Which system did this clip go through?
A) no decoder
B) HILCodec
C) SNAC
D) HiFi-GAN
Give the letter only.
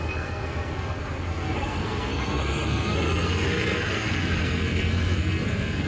C